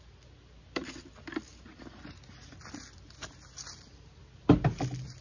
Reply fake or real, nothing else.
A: real